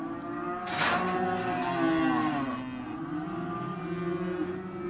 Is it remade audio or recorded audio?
recorded